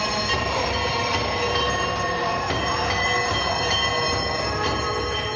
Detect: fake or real fake